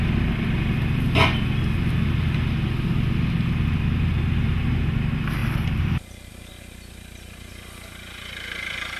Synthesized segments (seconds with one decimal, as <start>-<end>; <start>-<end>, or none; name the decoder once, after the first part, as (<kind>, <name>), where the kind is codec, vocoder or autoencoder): 5.4-6.3 (vocoder, BigVGAN v2)